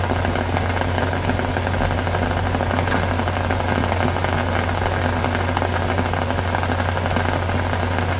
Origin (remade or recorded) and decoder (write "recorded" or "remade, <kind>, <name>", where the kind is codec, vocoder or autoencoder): recorded